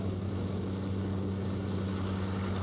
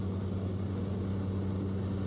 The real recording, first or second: second